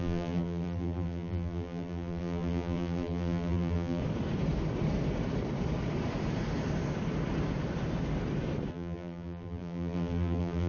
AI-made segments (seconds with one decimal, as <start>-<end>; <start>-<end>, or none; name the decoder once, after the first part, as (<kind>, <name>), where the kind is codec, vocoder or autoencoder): 0.0-4.0 (vocoder, BigVGAN v2); 8.7-10.7